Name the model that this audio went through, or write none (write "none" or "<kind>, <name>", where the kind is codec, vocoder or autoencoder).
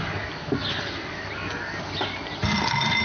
none